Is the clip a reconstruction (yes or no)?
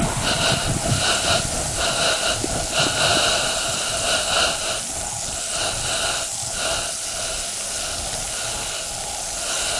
no